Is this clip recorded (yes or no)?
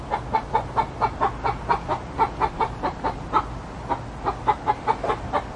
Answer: yes